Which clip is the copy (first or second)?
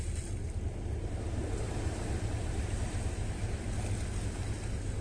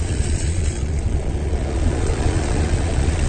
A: second